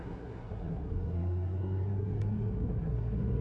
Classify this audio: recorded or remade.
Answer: remade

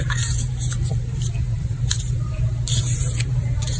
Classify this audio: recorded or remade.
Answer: remade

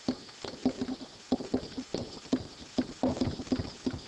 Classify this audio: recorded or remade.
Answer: recorded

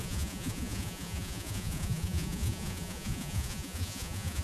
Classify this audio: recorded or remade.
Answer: remade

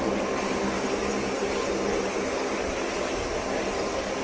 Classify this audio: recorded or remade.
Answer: recorded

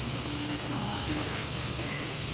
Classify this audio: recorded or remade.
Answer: remade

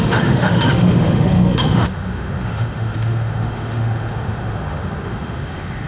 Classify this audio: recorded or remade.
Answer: remade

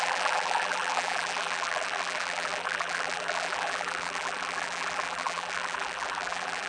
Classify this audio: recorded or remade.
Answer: remade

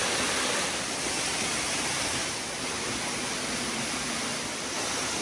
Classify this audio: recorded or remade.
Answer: recorded